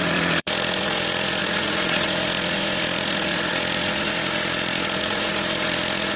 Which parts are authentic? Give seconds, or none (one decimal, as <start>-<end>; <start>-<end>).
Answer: none